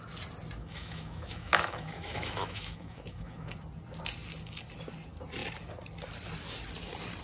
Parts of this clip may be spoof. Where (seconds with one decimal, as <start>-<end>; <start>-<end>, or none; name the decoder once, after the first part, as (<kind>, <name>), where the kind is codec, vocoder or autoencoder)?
0.6-3.5 (autoencoder, DAC-VAE)